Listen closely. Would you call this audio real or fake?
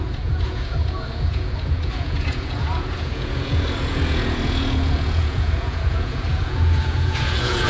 fake